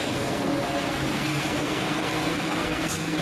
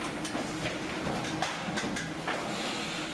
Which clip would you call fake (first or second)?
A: first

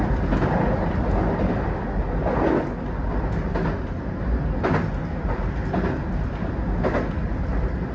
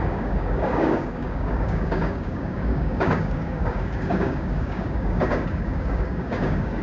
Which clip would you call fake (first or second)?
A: second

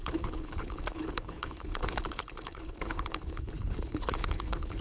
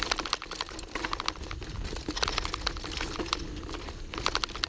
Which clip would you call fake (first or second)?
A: first